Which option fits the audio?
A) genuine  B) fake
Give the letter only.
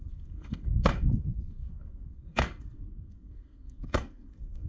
B